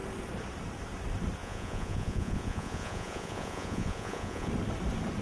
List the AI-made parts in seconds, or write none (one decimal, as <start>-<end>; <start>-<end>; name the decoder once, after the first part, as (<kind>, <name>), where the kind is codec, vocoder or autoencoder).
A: 1.4-4.5 (vocoder, Vocos)